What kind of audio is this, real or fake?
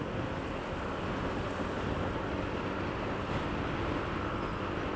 real